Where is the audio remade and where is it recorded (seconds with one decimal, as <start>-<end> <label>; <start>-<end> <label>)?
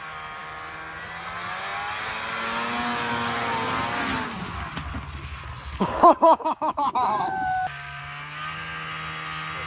0.0-5.8 recorded; 5.8-8.0 remade; 8.0-9.7 recorded